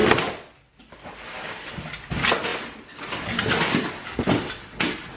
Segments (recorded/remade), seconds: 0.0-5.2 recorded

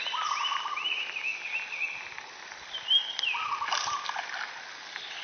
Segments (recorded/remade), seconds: 0.0-5.2 recorded

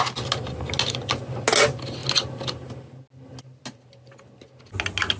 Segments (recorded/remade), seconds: 0.0-5.2 recorded

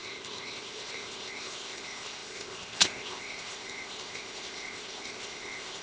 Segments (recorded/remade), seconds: 0.0-5.8 remade